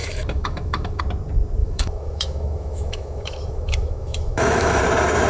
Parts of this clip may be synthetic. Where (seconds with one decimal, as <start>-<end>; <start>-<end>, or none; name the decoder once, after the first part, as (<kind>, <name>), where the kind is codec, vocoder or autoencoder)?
0.0-1.0 (autoencoder, DAC-VAE); 1.6-4.8